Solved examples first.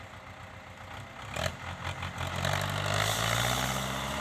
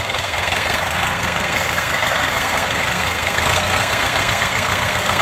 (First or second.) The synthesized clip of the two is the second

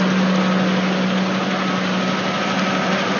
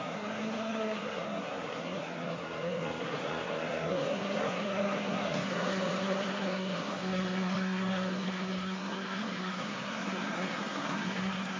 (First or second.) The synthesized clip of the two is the second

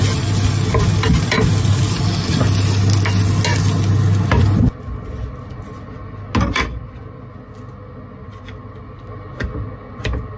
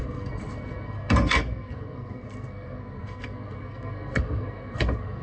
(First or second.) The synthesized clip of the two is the second